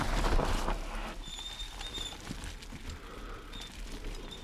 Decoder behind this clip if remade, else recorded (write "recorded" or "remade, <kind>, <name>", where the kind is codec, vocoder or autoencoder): recorded